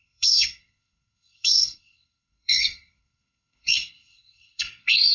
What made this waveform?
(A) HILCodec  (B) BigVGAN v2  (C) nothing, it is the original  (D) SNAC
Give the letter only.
D